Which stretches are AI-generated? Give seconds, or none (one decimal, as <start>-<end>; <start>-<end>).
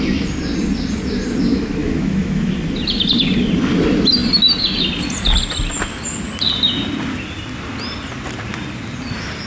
1.8-2.5